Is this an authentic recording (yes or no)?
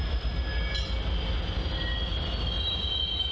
yes